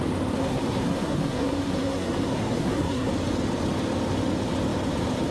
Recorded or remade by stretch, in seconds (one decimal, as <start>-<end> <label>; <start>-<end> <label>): 0.0-0.4 recorded; 0.4-3.1 remade; 3.1-5.3 recorded